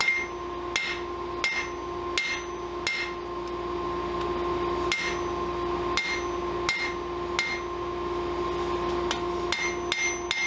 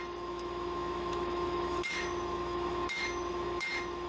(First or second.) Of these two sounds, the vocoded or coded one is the second